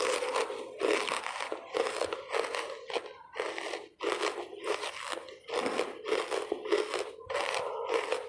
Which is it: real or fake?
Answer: real